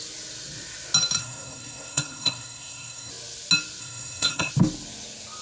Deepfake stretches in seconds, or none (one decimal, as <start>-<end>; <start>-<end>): 1.2-3.1; 3.8-4.5